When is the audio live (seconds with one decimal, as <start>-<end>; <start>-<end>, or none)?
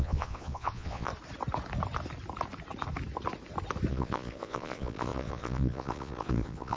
1.1-3.9